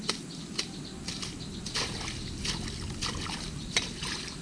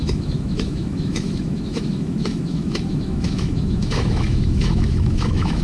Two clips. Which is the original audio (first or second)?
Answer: first